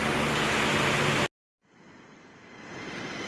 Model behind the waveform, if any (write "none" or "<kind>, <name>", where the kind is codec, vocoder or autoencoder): none